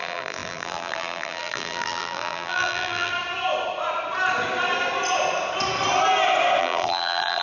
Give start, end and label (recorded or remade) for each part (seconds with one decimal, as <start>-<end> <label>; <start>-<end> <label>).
0.0-3.1 remade; 3.1-6.6 recorded; 6.6-7.4 remade